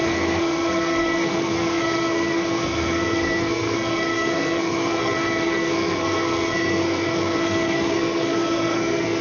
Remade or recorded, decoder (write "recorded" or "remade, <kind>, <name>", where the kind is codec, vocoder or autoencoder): remade, codec, SNAC